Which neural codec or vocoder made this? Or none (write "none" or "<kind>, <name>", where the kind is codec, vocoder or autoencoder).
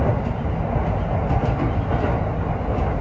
none